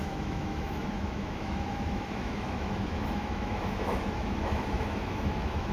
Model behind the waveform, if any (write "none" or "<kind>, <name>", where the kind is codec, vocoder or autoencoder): autoencoder, DAC-VAE